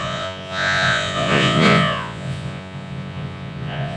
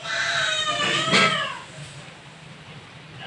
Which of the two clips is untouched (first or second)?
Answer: second